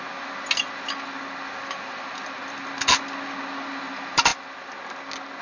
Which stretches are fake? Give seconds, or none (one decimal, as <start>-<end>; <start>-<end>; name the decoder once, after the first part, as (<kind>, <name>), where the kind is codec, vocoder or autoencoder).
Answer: none